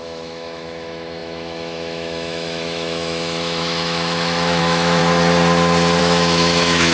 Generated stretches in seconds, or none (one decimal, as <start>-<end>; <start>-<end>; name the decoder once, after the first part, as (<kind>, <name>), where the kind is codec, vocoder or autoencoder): 0.0-5.0 (autoencoder, DAC-VAE); 6.0-6.9